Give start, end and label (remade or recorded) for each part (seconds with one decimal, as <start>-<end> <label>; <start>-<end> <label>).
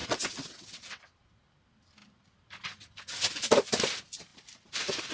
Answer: 0.0-1.0 remade; 1.0-5.1 recorded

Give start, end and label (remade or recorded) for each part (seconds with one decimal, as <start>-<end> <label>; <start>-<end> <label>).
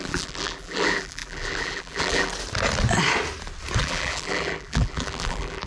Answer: 0.0-2.3 remade; 2.3-3.8 recorded; 3.8-5.7 remade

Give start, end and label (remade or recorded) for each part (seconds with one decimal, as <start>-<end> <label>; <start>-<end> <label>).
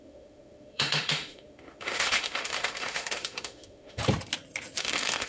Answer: 0.0-4.0 remade; 4.0-4.8 recorded; 4.8-5.3 remade